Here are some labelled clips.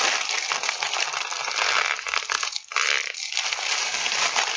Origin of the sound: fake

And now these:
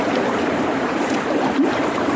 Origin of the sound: fake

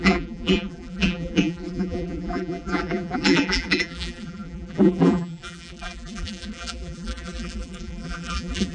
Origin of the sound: fake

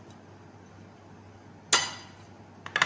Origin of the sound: real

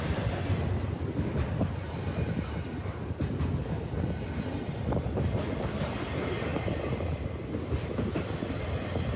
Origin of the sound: real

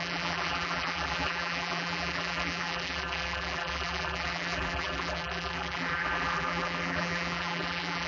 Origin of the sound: fake